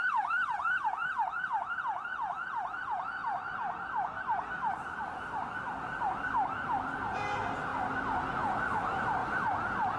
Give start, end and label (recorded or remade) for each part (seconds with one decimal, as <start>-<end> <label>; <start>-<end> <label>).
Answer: 0.0-7.7 remade; 7.7-8.6 recorded; 8.6-9.2 remade; 9.2-10.0 recorded